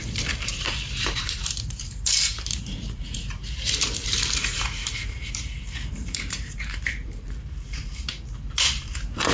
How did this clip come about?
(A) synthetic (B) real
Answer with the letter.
A